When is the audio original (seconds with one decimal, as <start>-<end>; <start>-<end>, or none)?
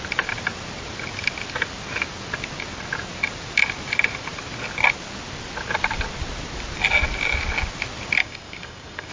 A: 0.0-8.2